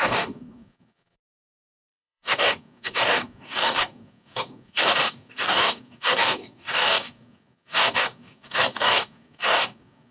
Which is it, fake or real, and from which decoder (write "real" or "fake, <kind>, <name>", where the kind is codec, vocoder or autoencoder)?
fake, codec, DAC